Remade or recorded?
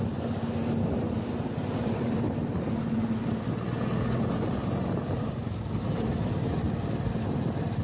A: recorded